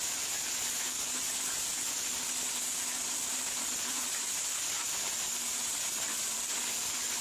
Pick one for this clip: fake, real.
fake